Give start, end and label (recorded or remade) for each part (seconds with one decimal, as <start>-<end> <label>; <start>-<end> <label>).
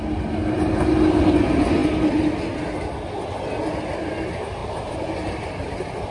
0.0-4.6 recorded; 4.6-6.1 remade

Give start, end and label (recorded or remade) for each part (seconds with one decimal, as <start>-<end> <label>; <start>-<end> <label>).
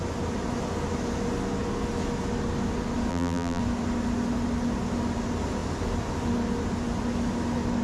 0.0-3.1 recorded; 3.1-3.6 remade; 3.6-7.8 recorded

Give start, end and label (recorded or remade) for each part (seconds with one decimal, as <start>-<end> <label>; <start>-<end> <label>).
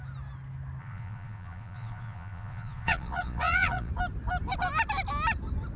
0.0-0.8 recorded; 0.8-3.9 remade; 3.9-5.8 recorded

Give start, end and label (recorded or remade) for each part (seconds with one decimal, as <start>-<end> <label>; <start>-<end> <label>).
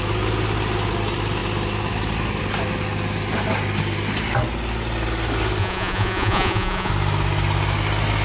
0.0-5.6 recorded; 5.6-6.9 remade; 6.9-8.2 recorded